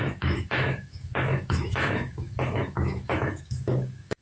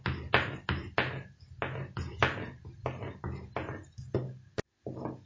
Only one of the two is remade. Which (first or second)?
first